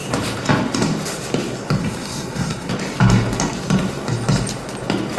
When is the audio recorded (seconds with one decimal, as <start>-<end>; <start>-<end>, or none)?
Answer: 0.0-1.8; 2.7-5.2